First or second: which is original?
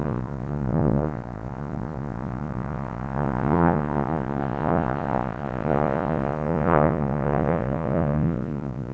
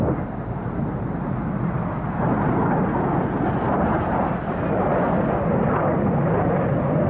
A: second